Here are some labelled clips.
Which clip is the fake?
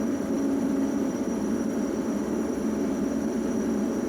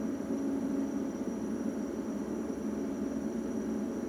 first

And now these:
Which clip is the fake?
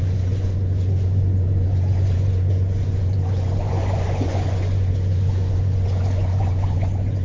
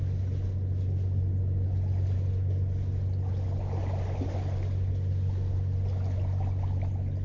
first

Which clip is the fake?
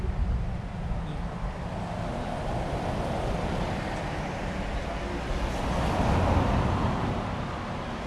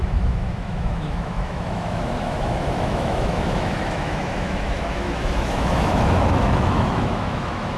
second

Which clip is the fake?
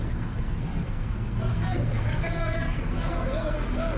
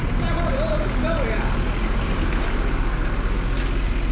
first